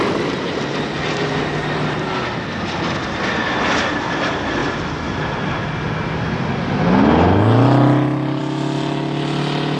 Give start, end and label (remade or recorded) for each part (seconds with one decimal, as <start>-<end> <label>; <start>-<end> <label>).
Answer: 0.0-9.8 recorded